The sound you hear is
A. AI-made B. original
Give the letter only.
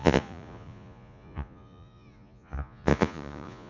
A